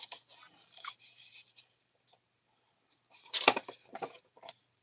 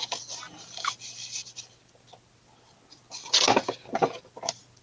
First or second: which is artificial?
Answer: first